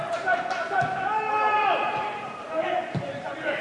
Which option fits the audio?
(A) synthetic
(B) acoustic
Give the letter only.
B